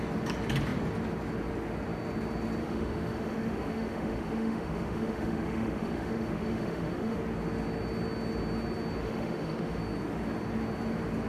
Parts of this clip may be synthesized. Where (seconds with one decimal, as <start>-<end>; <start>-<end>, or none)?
2.6-7.2; 9.0-9.8